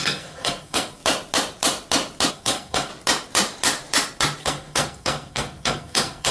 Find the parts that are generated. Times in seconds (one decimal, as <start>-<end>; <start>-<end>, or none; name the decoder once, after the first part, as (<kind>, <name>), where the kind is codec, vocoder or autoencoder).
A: 0.0-1.0 (codec, SNAC); 2.3-2.9; 4.4-6.3